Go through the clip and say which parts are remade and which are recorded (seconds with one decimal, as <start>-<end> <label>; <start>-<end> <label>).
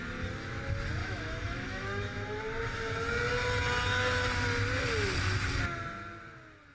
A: 0.0-1.0 recorded; 1.0-2.4 remade; 2.4-6.7 recorded